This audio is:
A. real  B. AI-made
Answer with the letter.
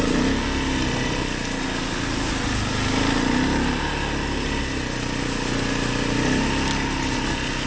A